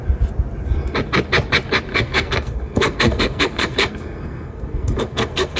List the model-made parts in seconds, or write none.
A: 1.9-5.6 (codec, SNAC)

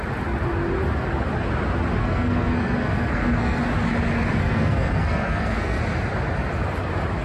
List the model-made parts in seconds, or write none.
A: 2.0-3.6 (codec, SNAC); 4.4-5.8

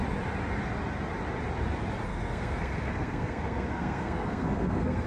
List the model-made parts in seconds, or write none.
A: 2.1-5.1 (codec, SNAC)

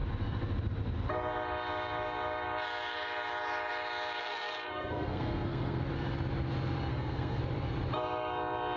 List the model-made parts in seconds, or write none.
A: 4.2-5.8 (codec, SNAC); 6.9-7.4

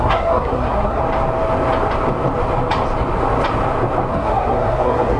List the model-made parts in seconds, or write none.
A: 0.0-1.0 (codec, SNAC); 4.1-5.2

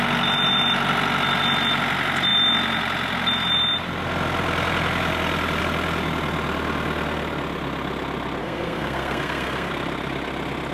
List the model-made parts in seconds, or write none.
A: 8.4-9.7 (codec, SNAC)

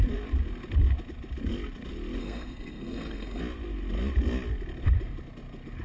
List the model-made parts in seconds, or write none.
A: 2.2-3.4 (codec, SNAC)

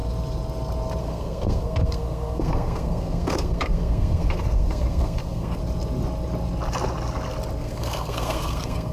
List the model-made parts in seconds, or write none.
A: 1.0-5.6 (codec, SNAC); 7.6-8.9